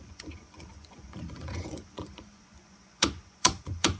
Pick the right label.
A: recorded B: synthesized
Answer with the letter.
B